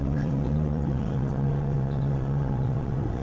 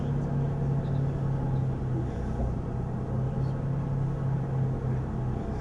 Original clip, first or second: second